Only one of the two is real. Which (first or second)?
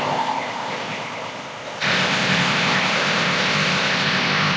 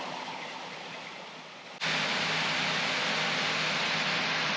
second